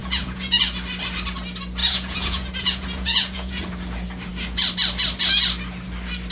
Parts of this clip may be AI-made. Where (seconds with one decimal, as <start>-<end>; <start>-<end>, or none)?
0.0-0.6; 1.8-3.6